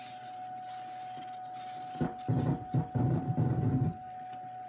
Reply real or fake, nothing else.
real